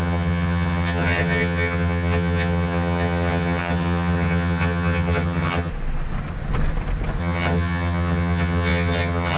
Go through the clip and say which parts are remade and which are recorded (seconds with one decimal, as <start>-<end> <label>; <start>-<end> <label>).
0.0-5.7 remade; 5.7-7.2 recorded; 7.2-9.4 remade